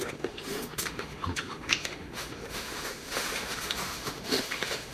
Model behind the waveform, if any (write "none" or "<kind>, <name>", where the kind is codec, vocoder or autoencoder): autoencoder, DAC-VAE